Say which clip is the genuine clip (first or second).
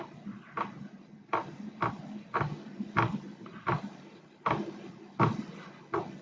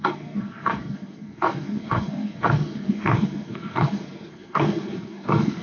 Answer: first